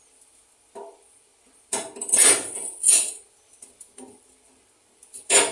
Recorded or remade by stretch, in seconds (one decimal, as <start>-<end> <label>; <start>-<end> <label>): 0.0-5.5 recorded